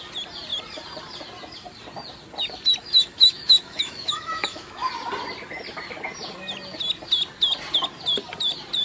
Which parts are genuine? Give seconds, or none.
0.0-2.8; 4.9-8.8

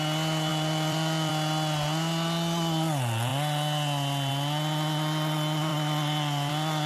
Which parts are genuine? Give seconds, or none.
0.0-0.5; 1.3-5.7; 6.5-6.9

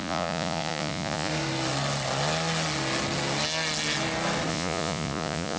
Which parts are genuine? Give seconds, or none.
1.3-4.5

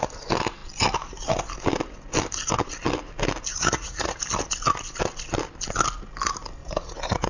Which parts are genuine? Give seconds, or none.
0.0-3.5; 4.2-6.6

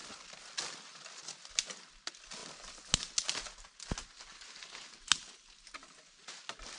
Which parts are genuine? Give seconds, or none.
0.0-6.8